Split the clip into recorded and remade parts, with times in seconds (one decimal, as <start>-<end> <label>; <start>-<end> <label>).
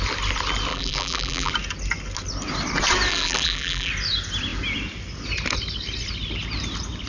0.0-0.7 recorded; 0.7-1.5 remade; 1.5-3.1 recorded; 3.1-3.9 remade; 3.9-7.1 recorded